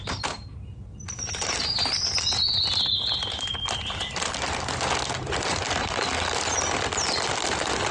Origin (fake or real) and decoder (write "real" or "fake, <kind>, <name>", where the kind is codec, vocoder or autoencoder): real